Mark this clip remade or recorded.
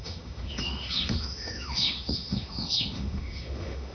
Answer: remade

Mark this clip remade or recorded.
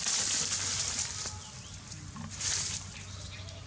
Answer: recorded